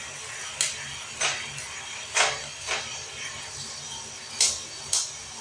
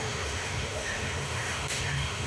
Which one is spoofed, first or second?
second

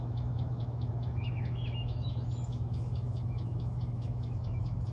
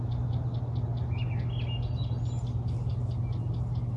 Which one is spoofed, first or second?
first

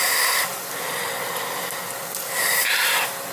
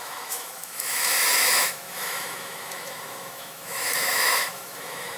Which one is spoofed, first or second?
second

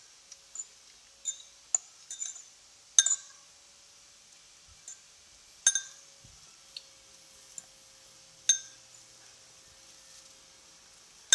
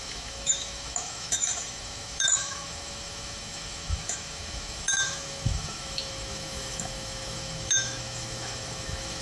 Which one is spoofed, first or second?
second